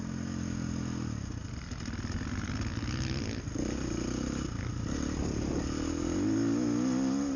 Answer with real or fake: real